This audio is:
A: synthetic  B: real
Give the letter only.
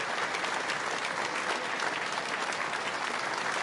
B